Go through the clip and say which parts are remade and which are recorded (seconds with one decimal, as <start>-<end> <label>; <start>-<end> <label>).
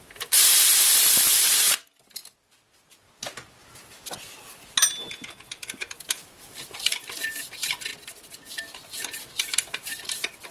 0.0-2.2 remade; 2.2-6.0 recorded; 6.0-7.9 remade; 7.9-8.5 recorded; 8.5-10.5 remade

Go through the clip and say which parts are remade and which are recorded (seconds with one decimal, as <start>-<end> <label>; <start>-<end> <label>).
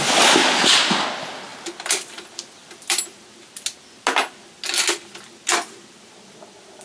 0.0-1.5 recorded; 1.5-3.0 remade; 3.0-6.8 recorded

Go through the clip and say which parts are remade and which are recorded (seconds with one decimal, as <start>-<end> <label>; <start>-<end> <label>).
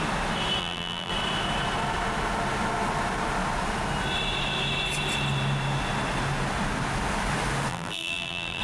0.0-0.6 recorded; 0.6-1.1 remade; 1.1-7.7 recorded; 7.7-8.6 remade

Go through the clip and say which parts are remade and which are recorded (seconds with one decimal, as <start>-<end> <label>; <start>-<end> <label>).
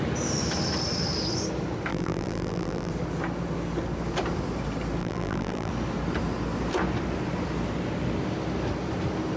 0.0-1.9 recorded; 1.9-2.9 remade; 2.9-5.0 recorded; 5.0-5.7 remade; 5.7-9.4 recorded